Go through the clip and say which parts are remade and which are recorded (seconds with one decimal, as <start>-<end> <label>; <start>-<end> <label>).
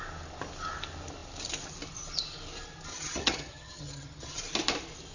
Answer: 0.0-2.9 recorded; 2.9-4.4 remade; 4.4-5.1 recorded